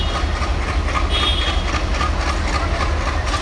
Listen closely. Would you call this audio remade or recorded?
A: recorded